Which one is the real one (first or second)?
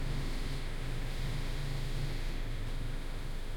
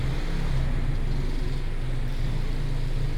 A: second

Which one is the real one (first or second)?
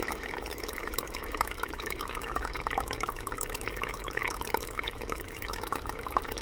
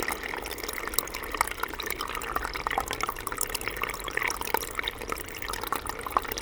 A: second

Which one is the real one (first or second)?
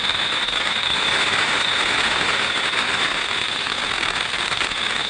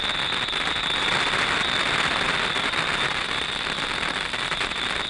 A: second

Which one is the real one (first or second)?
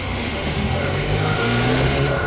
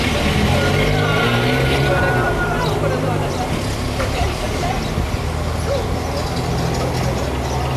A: second